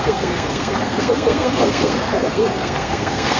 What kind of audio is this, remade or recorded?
remade